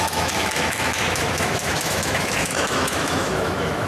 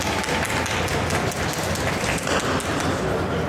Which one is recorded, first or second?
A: second